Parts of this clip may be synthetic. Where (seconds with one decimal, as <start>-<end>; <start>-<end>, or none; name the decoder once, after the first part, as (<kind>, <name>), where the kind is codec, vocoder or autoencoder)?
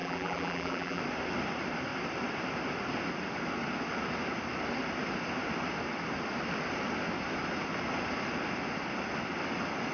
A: 0.0-1.0 (vocoder, BigVGAN v2)